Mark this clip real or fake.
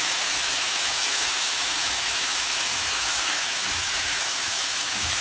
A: fake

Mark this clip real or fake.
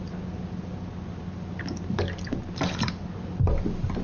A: real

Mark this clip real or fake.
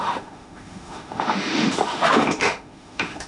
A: fake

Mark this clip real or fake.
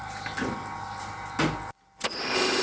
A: real